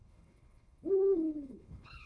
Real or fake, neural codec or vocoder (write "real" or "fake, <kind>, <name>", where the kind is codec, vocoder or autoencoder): fake, codec, HILCodec